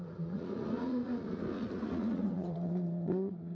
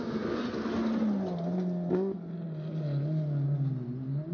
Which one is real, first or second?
second